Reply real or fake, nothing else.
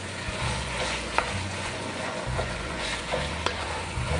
fake